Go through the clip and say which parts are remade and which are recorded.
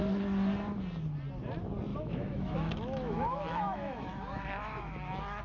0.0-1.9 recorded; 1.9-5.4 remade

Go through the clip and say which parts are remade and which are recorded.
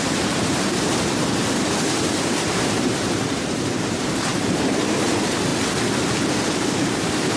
0.0-5.5 remade; 5.5-6.3 recorded; 6.3-7.4 remade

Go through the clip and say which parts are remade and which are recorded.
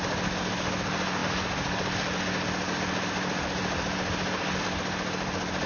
0.0-5.7 recorded